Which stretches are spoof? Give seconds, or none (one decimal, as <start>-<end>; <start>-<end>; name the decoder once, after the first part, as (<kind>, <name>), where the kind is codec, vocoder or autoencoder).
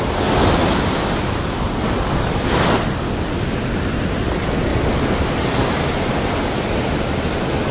4.7-6.9 (vocoder, BigVGAN v2)